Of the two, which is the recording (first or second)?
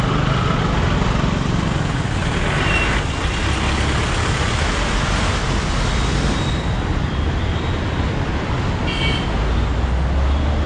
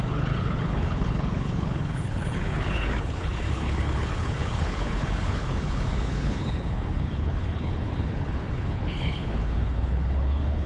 first